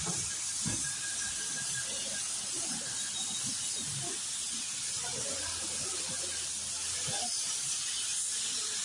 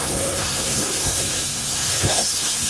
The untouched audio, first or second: first